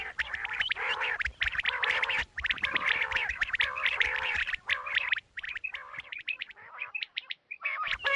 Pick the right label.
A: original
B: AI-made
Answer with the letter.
B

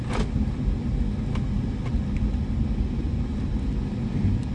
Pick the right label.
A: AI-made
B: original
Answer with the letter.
B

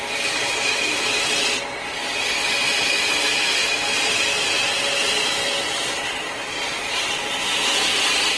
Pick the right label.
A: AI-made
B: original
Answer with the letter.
B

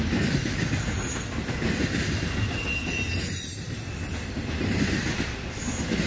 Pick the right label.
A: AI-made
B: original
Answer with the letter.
B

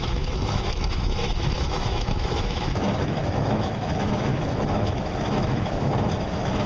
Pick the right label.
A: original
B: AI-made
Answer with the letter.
B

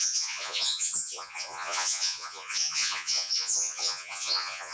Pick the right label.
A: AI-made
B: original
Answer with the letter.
A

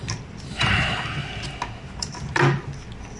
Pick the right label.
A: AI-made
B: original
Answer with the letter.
B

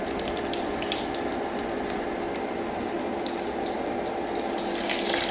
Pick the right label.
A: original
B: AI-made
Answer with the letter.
A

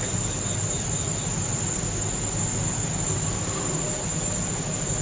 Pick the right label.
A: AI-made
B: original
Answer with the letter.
B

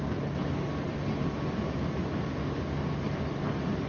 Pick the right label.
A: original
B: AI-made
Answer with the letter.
A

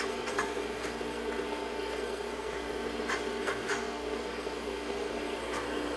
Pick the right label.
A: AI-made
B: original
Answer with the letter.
A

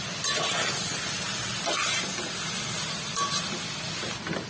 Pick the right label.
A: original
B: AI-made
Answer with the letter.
A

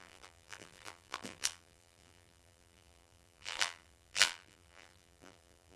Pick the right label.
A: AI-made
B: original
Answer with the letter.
A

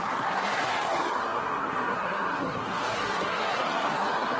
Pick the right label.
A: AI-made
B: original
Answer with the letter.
A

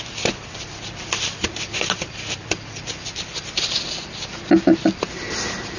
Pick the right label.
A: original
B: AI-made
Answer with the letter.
A